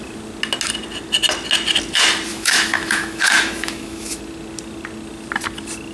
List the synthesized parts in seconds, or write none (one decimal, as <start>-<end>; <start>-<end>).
2.3-4.2